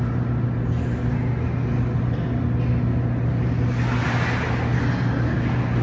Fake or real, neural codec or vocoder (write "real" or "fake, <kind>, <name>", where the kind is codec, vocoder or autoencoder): real